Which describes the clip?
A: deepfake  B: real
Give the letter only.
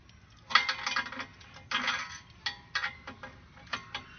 B